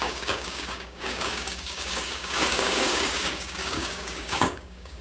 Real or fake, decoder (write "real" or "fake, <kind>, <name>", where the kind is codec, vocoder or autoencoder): fake, codec, DAC